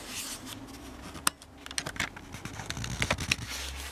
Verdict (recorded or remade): recorded